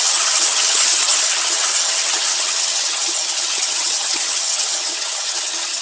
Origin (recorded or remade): remade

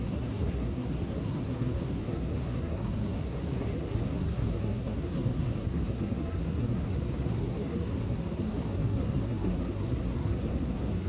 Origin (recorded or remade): remade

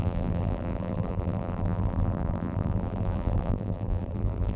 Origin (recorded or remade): remade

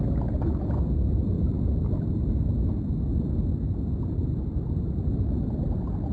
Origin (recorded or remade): recorded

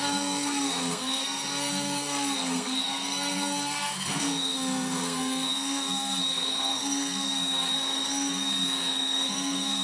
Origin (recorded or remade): remade